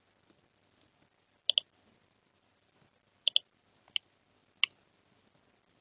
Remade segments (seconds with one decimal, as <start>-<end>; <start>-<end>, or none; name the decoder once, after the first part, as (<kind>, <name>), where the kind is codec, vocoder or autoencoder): none